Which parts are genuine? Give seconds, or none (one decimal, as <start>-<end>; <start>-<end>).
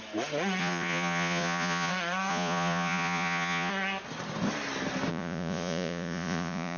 0.0-0.6; 1.9-2.3; 3.7-5.1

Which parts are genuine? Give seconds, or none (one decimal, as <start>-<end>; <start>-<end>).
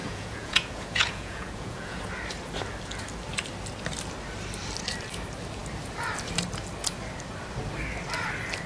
2.0-8.7